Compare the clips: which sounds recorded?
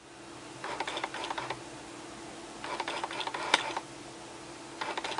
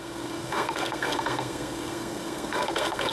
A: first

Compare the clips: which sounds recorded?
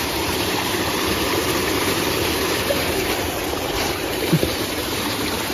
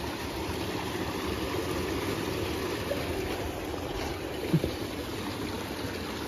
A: second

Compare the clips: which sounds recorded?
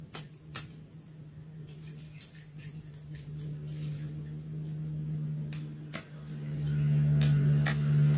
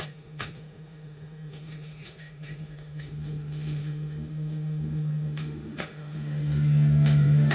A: first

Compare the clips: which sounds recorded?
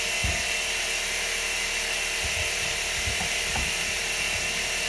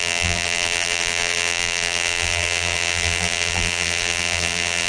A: first